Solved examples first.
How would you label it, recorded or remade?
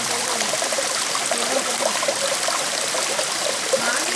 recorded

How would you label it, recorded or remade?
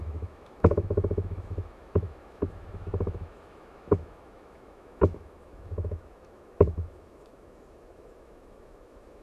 remade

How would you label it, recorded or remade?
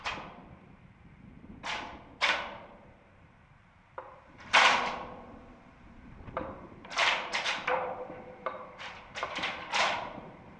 remade